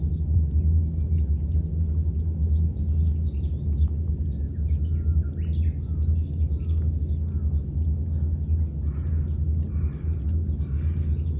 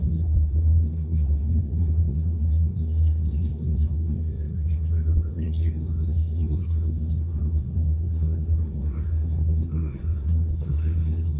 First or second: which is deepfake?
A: second